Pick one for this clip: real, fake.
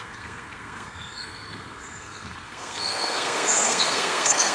fake